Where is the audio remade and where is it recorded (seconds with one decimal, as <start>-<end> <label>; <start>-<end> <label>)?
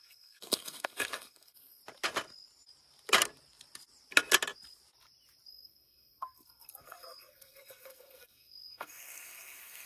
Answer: 0.0-1.8 remade; 1.8-5.5 recorded; 5.5-9.9 remade